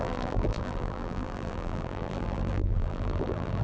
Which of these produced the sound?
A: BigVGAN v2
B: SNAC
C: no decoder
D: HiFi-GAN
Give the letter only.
A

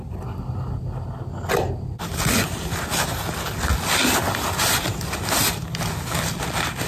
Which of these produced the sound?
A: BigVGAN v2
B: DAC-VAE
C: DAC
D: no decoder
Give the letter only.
D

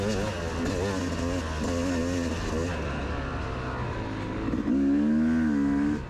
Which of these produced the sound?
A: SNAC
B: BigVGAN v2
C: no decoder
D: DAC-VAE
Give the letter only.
C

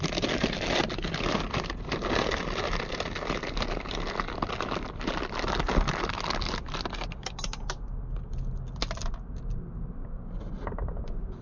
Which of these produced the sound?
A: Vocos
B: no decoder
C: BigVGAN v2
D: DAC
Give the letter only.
B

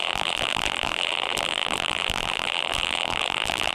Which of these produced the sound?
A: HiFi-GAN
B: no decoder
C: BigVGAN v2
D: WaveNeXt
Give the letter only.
C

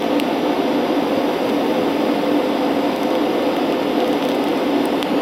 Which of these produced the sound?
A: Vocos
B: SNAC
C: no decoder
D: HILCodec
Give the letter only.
C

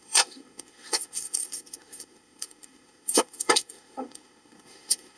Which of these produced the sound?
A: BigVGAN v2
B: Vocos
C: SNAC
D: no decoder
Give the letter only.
C